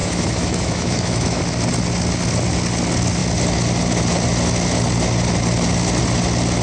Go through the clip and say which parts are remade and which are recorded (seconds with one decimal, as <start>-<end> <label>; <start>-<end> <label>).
0.0-1.4 remade; 1.4-6.6 recorded